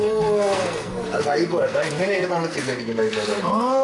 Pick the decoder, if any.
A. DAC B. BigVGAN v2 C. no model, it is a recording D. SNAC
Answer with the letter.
D